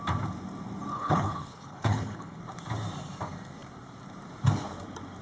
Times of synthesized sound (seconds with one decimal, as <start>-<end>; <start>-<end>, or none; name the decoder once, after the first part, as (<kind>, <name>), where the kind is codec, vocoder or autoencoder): 0.9-2.4 (codec, HILCodec)